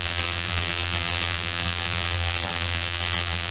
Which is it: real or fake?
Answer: fake